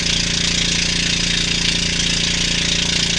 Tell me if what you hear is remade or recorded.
recorded